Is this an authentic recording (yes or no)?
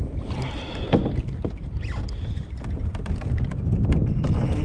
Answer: yes